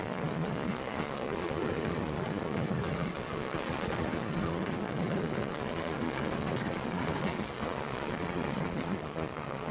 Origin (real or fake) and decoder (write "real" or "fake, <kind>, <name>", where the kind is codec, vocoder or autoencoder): fake, vocoder, Vocos